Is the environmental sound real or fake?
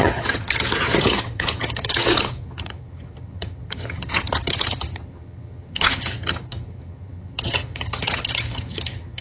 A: fake